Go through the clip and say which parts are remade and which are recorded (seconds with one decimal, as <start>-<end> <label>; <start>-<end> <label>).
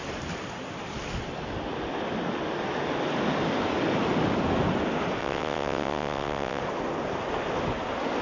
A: 0.0-5.2 recorded; 5.2-6.6 remade; 6.6-8.2 recorded